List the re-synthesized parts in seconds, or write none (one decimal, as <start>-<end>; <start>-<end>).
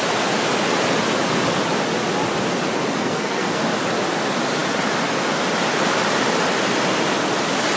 3.0-3.6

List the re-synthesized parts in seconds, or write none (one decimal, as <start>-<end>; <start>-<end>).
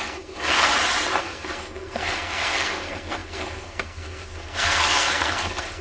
0.0-0.7; 1.2-5.8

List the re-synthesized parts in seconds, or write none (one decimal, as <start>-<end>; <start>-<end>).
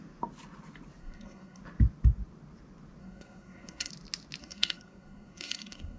1.0-1.6; 3.0-3.9; 4.4-6.0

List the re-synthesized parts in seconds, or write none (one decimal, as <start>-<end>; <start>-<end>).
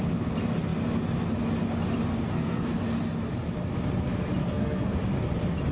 2.1-2.8; 4.4-5.0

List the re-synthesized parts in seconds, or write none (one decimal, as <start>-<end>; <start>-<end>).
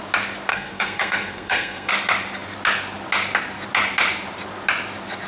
0.5-1.9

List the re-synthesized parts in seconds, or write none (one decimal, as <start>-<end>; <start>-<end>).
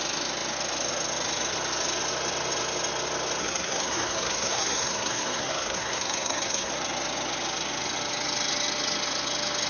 3.4-6.7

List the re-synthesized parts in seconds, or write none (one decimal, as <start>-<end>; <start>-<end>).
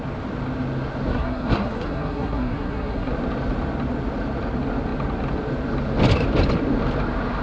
1.1-3.1